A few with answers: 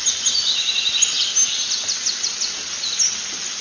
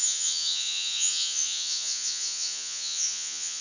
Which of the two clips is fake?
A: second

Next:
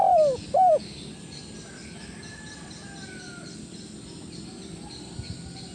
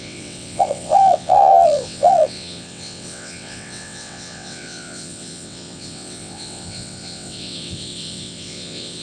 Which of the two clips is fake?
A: second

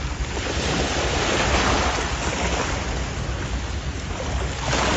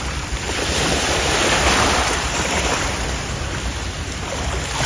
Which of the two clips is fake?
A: second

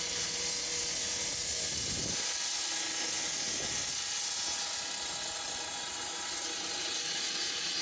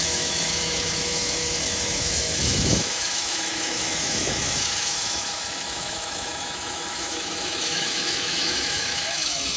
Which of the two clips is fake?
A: second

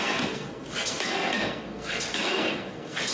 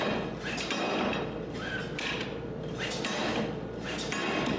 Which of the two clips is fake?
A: first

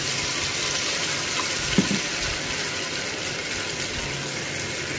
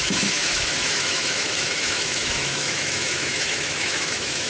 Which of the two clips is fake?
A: second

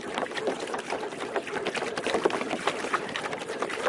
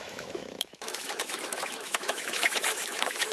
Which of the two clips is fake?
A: second